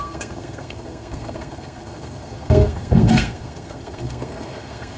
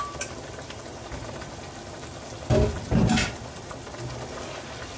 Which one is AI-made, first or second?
first